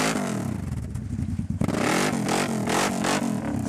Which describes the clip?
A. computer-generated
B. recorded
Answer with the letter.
B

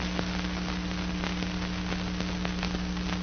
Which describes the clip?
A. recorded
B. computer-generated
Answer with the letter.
A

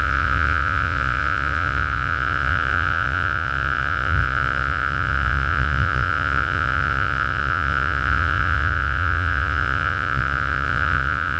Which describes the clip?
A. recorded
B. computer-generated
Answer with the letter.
B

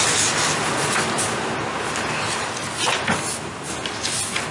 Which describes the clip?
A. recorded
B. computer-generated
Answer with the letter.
A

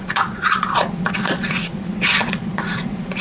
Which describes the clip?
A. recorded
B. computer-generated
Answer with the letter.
B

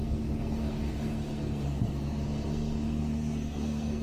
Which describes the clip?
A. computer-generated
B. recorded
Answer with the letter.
A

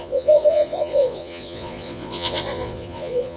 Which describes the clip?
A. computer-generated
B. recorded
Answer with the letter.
A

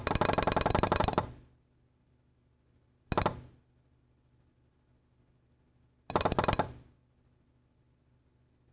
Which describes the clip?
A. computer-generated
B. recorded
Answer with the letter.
B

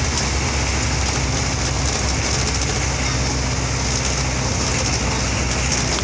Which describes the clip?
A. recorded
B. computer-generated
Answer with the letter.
A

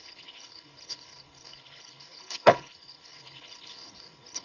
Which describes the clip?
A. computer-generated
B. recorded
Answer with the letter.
A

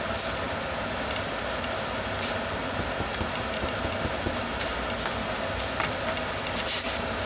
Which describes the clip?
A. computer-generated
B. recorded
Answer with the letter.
B